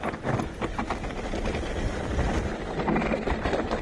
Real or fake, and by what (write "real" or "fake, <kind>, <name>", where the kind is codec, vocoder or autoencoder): real